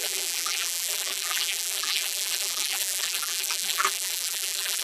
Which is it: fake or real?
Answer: fake